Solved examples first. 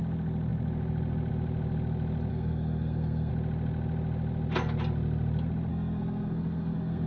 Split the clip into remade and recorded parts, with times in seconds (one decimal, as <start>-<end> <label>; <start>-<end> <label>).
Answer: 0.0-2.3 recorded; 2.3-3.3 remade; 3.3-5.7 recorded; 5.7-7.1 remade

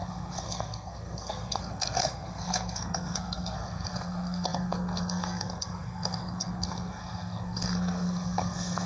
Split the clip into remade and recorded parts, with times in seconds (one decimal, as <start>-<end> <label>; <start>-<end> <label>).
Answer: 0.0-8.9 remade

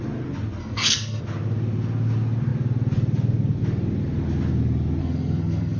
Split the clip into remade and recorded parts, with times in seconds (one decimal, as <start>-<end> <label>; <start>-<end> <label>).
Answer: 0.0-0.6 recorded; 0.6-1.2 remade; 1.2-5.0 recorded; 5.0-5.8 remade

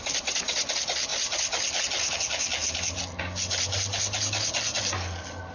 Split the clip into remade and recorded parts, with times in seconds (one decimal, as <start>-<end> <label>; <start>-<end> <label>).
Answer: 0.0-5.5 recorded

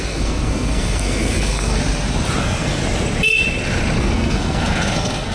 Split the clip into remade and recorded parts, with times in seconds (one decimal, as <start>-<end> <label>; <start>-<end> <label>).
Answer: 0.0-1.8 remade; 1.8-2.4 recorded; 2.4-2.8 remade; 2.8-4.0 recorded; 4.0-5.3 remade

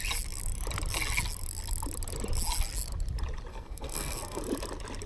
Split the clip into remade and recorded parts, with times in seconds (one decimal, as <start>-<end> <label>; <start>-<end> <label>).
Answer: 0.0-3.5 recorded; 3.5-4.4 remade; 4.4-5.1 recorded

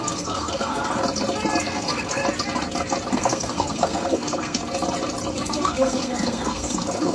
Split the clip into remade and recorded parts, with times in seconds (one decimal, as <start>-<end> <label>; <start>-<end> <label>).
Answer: 0.0-0.8 remade; 0.8-1.6 recorded; 1.6-2.2 remade; 2.2-3.1 recorded; 3.1-4.6 remade; 4.6-5.3 recorded; 5.3-7.1 remade

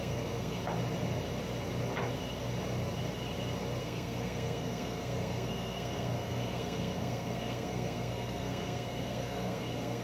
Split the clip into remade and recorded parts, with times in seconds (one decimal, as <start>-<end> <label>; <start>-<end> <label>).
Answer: 0.0-0.6 remade; 0.6-3.8 recorded; 3.8-10.0 remade